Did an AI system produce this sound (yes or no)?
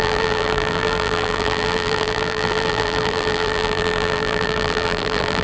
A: yes